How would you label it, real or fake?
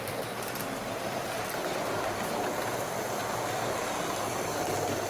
real